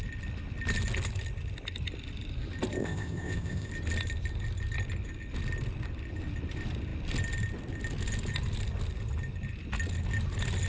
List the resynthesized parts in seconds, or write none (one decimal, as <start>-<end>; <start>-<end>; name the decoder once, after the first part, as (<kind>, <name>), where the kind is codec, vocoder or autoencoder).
2.8-3.7 (codec, ZipCodec)